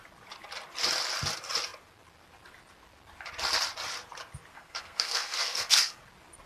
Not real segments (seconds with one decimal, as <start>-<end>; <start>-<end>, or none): 4.5-6.0